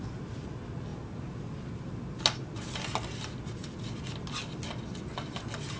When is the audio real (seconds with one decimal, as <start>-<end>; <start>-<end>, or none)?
0.0-5.8